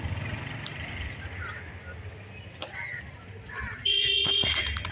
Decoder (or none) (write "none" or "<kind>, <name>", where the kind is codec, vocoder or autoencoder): none